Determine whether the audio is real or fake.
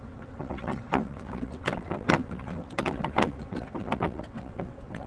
fake